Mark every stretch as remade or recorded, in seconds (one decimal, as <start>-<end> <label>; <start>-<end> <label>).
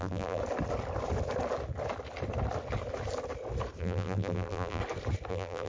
0.0-0.4 remade; 0.4-3.8 recorded; 3.8-4.8 remade; 4.8-5.3 recorded; 5.3-5.7 remade